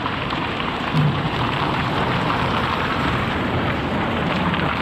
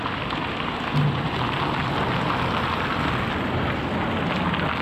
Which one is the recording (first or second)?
second